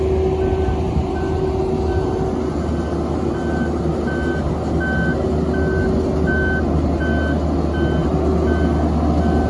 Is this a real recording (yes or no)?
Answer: yes